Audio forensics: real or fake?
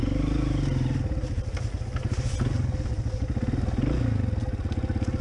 real